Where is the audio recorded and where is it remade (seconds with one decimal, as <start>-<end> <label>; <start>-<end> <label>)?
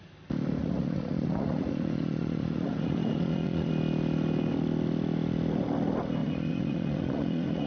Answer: 0.0-0.6 recorded; 0.6-3.7 remade; 3.7-6.2 recorded; 6.2-7.7 remade